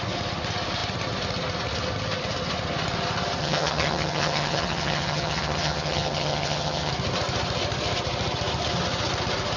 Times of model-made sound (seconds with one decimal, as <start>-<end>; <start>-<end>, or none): 3.4-6.9